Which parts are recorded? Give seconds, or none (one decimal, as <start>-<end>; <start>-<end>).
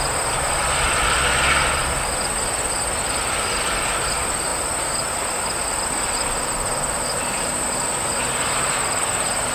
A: 0.0-9.5